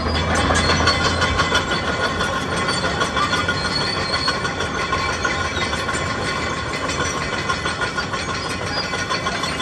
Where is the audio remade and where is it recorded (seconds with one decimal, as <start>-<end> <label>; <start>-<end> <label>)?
0.0-9.6 recorded